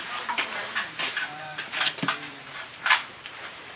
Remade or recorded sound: remade